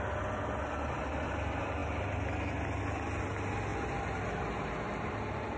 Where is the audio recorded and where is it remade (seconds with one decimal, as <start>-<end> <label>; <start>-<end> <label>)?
0.0-5.6 recorded